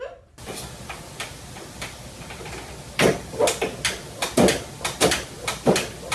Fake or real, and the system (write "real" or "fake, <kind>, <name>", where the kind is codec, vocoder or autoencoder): real